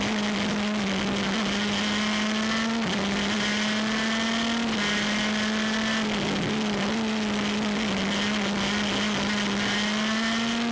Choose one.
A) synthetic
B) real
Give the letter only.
B